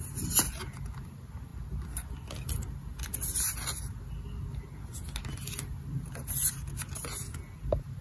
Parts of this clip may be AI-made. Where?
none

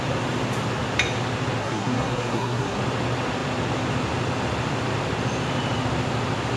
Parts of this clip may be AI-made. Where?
1.6-2.8 (codec, SNAC)

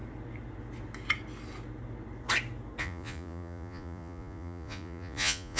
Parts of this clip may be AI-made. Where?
2.8-5.6 (vocoder, Vocos)

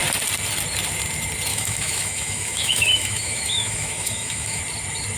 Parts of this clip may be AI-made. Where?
1.5-4.6 (autoencoder, DAC-VAE)

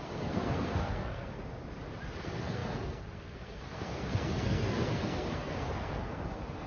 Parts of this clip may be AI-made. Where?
0.0-1.4 (codec, SNAC); 2.2-6.7

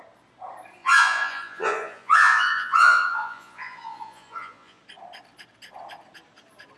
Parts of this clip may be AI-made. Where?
0.8-4.8 (vocoder, Vocos)

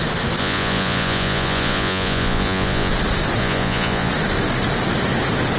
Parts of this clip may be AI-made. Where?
0.4-2.9 (vocoder, Vocos); 3.4-4.1

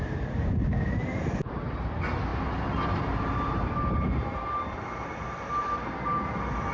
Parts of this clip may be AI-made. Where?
2.3-5.5 (vocoder, BigVGAN v2)